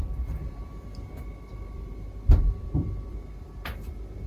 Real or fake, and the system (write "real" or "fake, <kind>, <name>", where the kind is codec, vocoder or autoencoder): real